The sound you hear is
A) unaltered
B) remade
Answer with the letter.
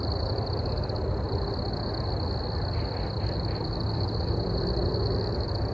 A